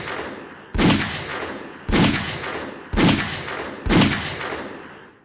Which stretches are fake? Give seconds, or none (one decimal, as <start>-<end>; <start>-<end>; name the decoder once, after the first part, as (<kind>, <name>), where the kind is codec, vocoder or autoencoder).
1.3-2.7 (vocoder, Vocos)

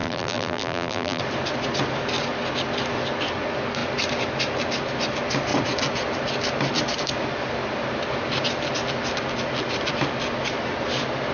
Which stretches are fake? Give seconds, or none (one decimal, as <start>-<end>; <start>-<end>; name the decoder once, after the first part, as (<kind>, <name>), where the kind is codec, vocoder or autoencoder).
0.0-1.2 (vocoder, BigVGAN v2)

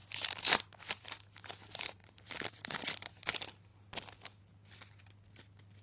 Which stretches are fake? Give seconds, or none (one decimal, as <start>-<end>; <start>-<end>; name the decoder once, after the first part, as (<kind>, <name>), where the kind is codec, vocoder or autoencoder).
0.0-0.6 (vocoder, BigVGAN v2); 2.0-3.1